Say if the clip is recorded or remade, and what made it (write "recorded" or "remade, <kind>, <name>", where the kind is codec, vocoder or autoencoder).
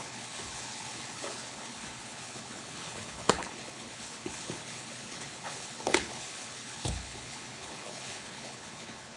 remade, codec, HILCodec